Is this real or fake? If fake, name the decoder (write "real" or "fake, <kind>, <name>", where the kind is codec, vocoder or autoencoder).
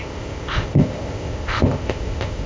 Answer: fake, codec, ZipCodec